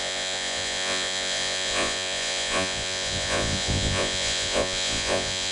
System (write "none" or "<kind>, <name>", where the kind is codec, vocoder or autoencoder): vocoder, Vocos